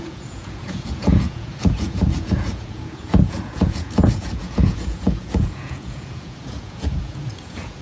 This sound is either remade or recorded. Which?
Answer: remade